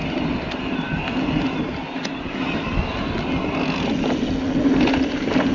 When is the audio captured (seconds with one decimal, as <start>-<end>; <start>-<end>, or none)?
0.0-5.5

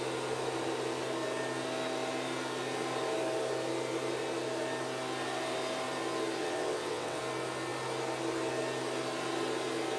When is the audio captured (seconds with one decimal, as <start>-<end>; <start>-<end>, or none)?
0.0-6.4; 7.2-10.0

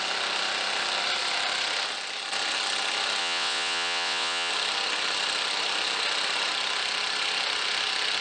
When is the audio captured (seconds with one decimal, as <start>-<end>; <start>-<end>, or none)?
0.0-3.2; 4.5-8.2

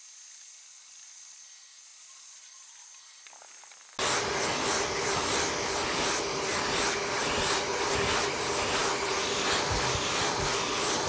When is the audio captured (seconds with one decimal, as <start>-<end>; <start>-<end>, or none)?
0.0-11.1

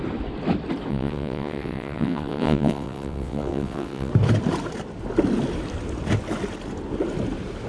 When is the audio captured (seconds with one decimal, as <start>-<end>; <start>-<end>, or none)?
0.0-0.9; 4.1-7.7

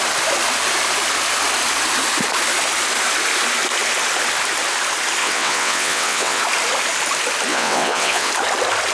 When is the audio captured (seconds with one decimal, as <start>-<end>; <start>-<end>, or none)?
0.0-5.2; 6.4-7.5; 8.3-8.9

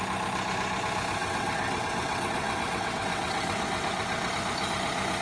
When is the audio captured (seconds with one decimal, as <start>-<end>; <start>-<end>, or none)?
0.0-1.2; 4.3-5.2

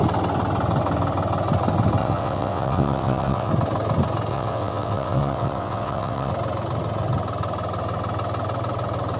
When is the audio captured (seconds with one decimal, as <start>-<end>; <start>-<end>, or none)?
0.0-2.0; 3.5-4.3; 6.3-9.2